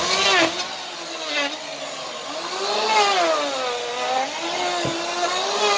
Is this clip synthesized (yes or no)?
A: no